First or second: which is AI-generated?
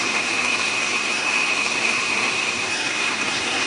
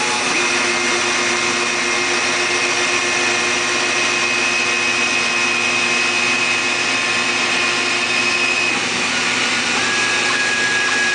first